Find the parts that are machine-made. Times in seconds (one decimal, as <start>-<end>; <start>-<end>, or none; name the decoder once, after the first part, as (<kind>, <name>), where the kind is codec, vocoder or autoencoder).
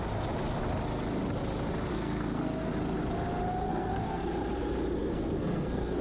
1.9-2.7 (codec, SNAC); 3.7-4.2; 5.0-6.0